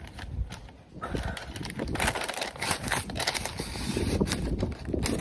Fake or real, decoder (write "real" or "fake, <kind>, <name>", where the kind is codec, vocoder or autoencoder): real